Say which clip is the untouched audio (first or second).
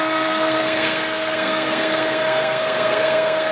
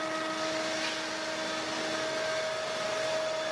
second